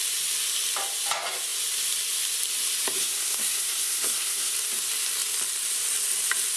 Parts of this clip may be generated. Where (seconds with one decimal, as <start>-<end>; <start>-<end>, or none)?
3.0-4.5